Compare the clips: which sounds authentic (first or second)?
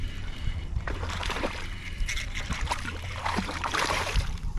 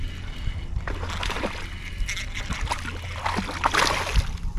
second